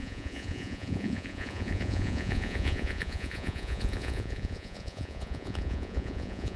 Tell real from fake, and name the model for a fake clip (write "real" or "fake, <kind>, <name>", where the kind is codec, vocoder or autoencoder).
fake, vocoder, Vocos